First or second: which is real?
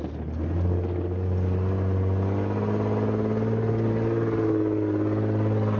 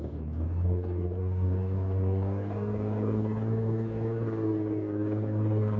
first